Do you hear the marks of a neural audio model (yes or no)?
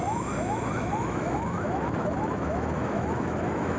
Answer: yes